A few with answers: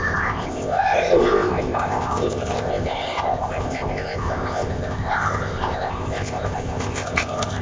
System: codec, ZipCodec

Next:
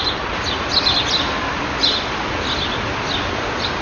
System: none